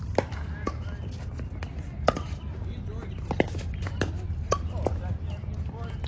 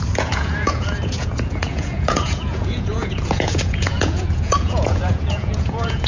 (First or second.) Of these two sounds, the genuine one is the first